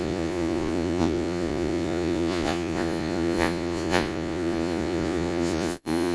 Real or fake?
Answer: fake